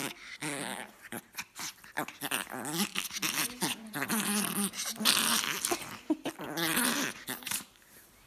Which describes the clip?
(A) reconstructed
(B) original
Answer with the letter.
B